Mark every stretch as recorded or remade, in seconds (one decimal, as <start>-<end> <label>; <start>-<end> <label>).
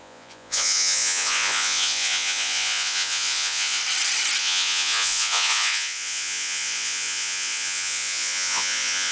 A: 0.0-3.8 remade; 3.8-4.4 recorded; 4.4-9.1 remade